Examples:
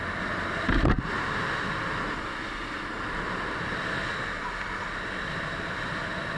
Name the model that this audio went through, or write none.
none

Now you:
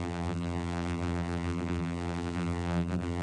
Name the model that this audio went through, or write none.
vocoder, BigVGAN v2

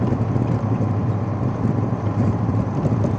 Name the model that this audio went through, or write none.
vocoder, BigVGAN v2